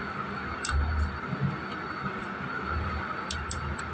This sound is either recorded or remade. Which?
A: recorded